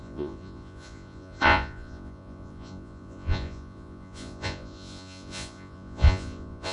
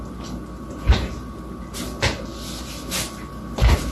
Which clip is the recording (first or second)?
second